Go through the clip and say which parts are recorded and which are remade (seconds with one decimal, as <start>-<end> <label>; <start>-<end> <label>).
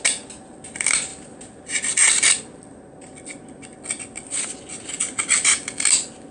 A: 0.0-6.3 recorded